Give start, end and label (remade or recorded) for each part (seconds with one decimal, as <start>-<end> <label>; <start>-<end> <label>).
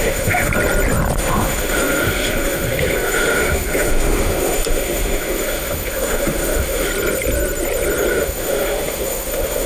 0.0-0.5 remade; 0.5-1.2 recorded; 1.2-6.9 remade; 6.9-8.1 recorded; 8.1-9.7 remade